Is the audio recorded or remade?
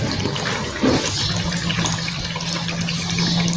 recorded